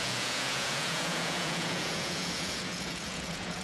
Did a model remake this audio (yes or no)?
yes